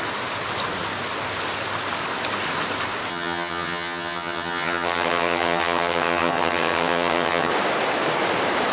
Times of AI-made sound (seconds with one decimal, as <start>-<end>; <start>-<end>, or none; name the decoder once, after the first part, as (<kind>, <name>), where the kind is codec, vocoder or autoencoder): 3.1-7.5 (vocoder, HiFi-GAN)